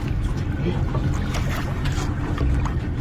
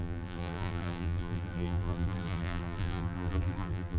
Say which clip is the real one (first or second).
first